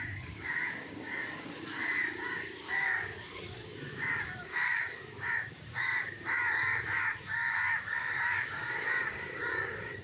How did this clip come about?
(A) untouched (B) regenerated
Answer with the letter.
B